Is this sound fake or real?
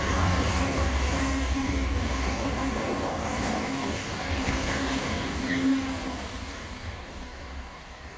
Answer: fake